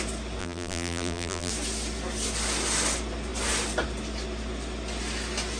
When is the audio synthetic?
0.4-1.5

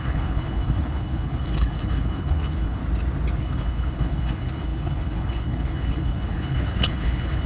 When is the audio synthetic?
0.0-2.8; 3.4-7.5

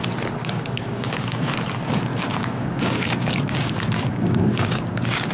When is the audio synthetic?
0.4-1.5; 2.1-5.3